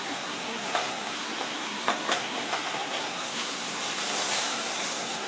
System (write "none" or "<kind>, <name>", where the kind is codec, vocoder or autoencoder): codec, SNAC